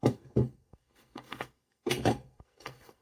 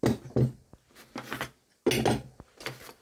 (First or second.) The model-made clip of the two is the first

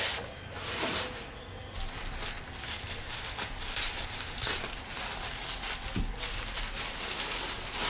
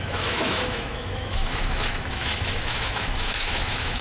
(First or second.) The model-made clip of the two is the second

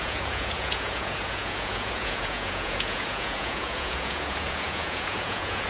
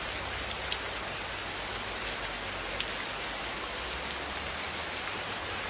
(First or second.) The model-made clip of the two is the first